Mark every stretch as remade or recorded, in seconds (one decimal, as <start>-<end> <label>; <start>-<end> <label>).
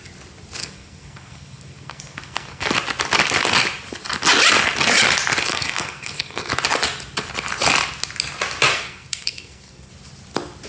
0.0-0.6 recorded; 0.6-2.7 remade; 2.7-5.5 recorded; 5.5-6.5 remade; 6.5-8.7 recorded; 8.7-9.9 remade; 9.9-10.7 recorded